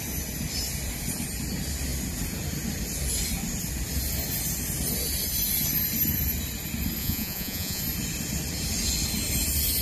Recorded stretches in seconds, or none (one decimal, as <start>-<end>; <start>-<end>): 0.0-7.0; 7.8-9.8